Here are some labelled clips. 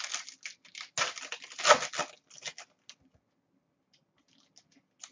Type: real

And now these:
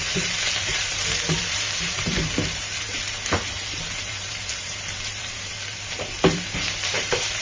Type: fake